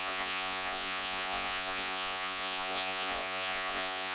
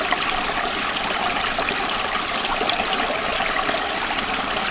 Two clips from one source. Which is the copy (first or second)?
first